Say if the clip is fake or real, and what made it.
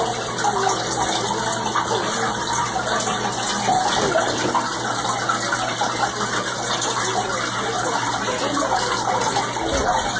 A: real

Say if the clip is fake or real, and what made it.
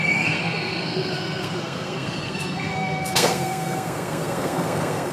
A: fake, codec, SNAC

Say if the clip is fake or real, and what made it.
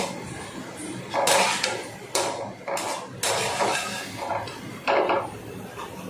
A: real